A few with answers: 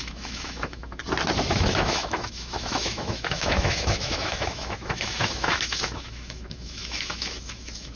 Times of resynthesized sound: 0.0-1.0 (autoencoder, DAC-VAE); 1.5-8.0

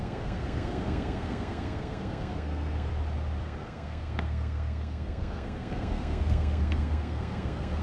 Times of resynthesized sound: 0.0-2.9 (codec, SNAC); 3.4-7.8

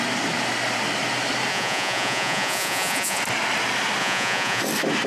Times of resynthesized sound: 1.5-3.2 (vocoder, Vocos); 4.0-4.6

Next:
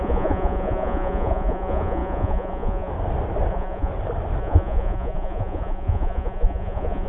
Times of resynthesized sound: 0.0-2.9 (vocoder, Vocos); 3.5-3.9; 4.4-7.1

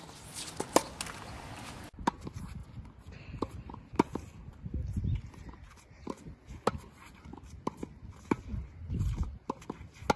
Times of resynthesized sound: none

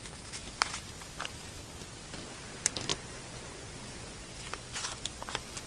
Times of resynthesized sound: 2.9-5.7 (vocoder, Vocos)

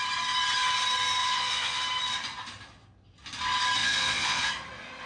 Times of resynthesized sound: 1.2-1.8 (vocoder, Vocos); 3.8-4.5

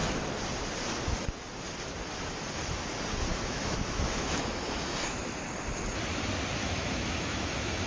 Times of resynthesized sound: 3.3-5.4 (autoencoder, DAC-VAE); 6.6-7.9